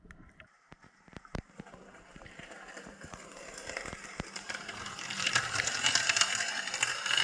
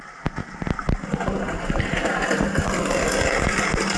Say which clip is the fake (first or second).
first